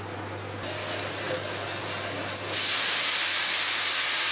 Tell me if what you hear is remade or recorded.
recorded